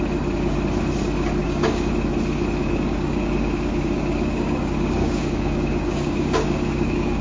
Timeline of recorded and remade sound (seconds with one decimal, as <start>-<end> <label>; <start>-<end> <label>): 0.0-1.4 recorded; 1.4-1.9 remade; 1.9-2.6 recorded; 2.6-7.2 remade